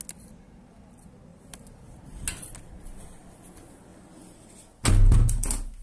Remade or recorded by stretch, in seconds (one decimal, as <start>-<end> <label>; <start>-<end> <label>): 0.0-5.8 recorded